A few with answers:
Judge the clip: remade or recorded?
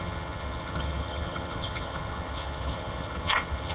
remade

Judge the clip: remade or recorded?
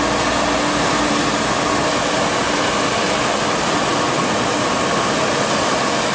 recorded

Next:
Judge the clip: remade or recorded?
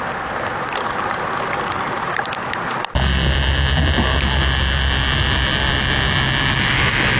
recorded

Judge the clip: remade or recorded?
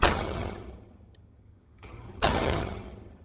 remade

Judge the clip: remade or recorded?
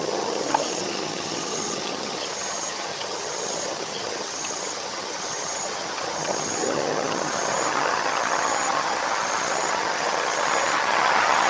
remade